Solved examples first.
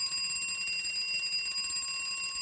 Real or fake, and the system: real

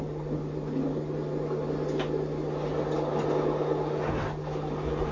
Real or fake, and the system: real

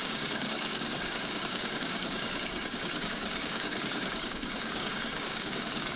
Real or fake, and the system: fake, codec, DAC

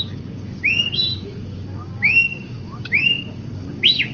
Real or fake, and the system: fake, codec, DAC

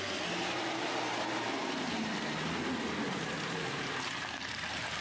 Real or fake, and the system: real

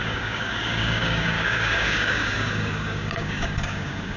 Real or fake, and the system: fake, codec, DAC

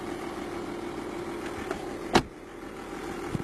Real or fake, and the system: real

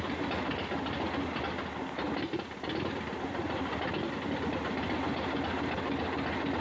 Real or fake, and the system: real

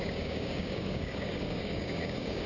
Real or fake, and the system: fake, codec, DAC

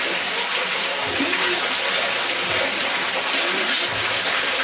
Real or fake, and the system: real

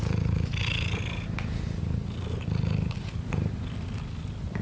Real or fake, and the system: real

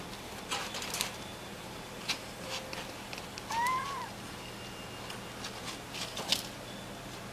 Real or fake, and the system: real